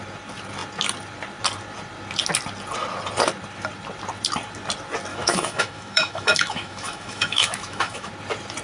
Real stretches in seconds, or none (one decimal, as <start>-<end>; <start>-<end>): 0.0-5.1; 8.1-8.6